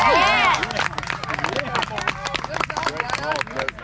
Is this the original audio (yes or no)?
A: yes